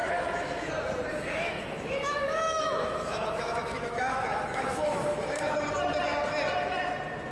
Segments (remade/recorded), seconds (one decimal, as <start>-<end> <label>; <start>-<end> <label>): 0.0-0.7 remade; 0.7-1.1 recorded; 1.1-5.5 remade; 5.5-7.3 recorded